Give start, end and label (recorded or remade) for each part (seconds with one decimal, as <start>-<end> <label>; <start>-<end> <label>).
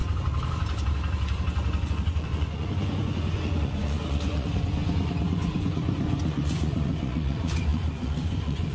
0.0-1.9 recorded; 1.9-8.7 remade